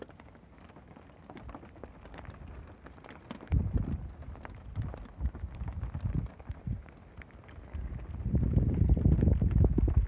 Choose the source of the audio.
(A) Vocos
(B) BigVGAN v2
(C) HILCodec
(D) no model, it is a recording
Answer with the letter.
D